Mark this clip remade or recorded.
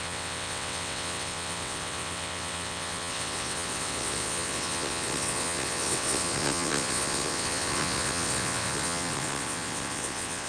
remade